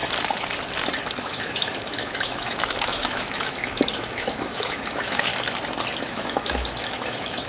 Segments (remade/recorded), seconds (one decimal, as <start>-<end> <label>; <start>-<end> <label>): 0.0-1.2 recorded; 1.2-5.3 remade; 5.3-6.0 recorded; 6.0-7.5 remade

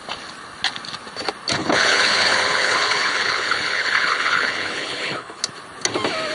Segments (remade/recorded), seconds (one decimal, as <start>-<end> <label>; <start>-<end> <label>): 0.0-1.6 recorded; 1.6-5.4 remade; 5.4-6.3 recorded

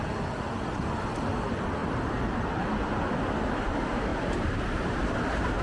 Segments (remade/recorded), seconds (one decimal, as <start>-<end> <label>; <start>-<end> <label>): 0.0-4.1 recorded; 4.1-5.6 remade

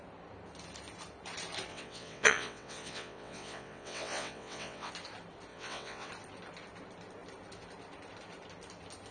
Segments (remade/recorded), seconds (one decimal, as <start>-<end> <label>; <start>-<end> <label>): 0.0-1.7 recorded; 1.7-4.9 remade; 4.9-5.5 recorded; 5.5-6.1 remade; 6.1-9.1 recorded

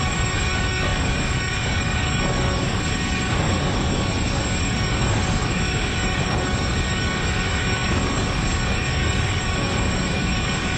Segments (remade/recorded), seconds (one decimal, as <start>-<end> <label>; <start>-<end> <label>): 0.0-10.8 remade

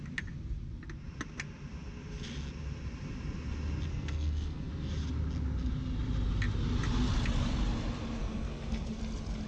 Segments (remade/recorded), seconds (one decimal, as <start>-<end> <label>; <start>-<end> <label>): 0.0-3.9 recorded; 3.9-4.7 remade; 4.7-8.2 recorded; 8.2-9.0 remade; 9.0-9.5 recorded